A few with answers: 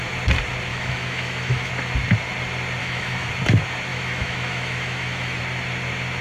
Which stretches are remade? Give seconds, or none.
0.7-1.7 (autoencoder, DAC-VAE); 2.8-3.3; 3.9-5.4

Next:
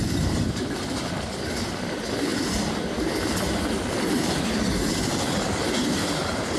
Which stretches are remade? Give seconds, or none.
none